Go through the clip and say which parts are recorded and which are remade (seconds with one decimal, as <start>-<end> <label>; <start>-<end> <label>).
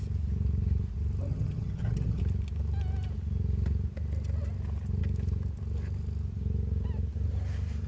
0.0-1.3 recorded; 1.3-2.2 remade; 2.2-7.9 recorded